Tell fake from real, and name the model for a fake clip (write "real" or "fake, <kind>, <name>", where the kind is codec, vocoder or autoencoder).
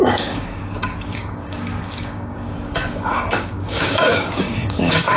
fake, codec, DAC